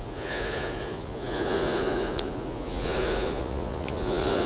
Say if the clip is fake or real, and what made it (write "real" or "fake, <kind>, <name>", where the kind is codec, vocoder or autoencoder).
fake, vocoder, Vocos